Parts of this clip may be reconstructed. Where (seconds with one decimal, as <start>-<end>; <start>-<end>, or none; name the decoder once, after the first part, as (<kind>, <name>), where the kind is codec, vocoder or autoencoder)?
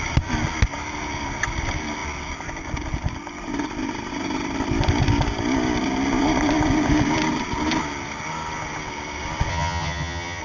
9.5-10.4 (vocoder, HiFi-GAN)